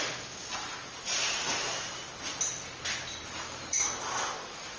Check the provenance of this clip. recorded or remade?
recorded